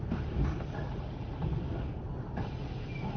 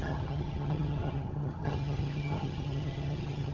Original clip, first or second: first